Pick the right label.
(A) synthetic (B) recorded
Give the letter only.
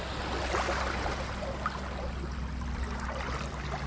B